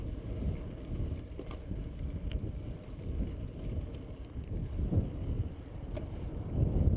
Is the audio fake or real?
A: real